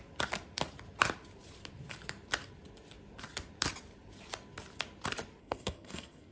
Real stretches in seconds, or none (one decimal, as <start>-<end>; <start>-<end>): 0.0-5.4